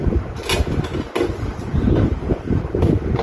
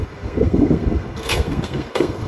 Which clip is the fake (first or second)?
second